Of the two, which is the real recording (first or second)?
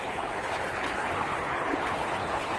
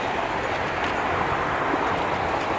second